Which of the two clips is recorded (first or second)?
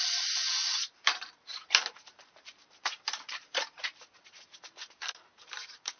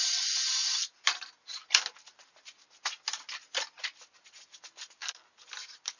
second